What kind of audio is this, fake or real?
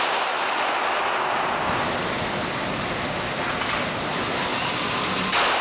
real